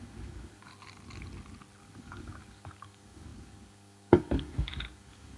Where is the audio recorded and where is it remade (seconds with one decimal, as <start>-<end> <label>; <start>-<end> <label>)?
0.0-0.7 remade; 0.7-1.8 recorded; 1.8-5.4 remade